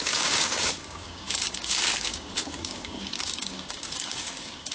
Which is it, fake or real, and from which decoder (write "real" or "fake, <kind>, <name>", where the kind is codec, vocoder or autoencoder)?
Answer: fake, codec, DAC